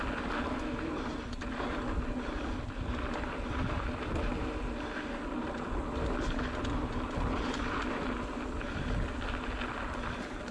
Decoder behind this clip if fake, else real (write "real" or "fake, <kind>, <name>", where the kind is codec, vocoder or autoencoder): real